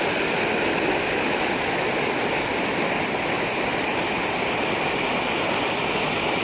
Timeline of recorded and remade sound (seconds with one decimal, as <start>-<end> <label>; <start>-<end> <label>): 0.0-6.4 recorded